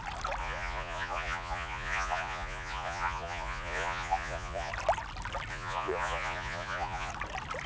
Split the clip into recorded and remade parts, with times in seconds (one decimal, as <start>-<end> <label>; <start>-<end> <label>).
0.0-0.4 recorded; 0.4-4.7 remade; 4.7-5.5 recorded; 5.5-7.1 remade; 7.1-7.7 recorded